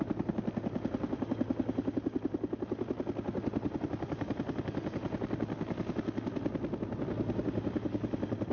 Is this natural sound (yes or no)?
yes